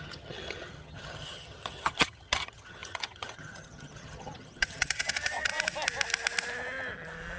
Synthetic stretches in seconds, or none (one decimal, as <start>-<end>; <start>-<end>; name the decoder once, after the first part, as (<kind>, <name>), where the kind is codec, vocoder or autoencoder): 0.0-5.5 (vocoder, HiFi-GAN)

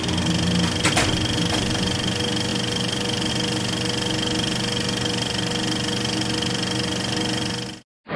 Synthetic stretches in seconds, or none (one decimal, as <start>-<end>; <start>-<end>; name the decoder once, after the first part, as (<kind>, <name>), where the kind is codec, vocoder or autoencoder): none

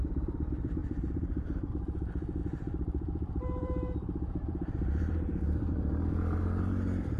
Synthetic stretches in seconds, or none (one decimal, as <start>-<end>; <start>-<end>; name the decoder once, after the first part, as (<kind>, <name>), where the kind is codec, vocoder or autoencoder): 0.0-0.8 (vocoder, BigVGAN v2); 1.7-7.2

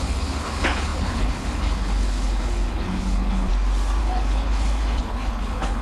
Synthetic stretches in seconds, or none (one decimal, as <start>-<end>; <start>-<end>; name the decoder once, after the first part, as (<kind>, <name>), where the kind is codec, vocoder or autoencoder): 0.0-3.5 (codec, HILCodec); 4.0-5.8